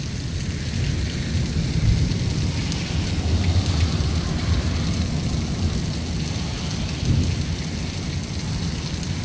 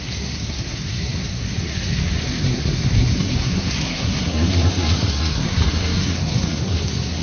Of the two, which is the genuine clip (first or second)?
first